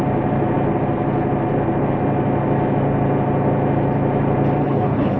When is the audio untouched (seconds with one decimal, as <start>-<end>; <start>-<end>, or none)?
0.0-4.6